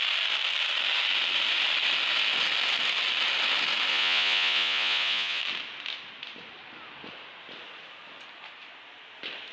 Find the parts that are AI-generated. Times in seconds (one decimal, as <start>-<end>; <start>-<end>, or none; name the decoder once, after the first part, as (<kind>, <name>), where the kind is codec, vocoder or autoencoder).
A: 3.9-5.4 (vocoder, Vocos)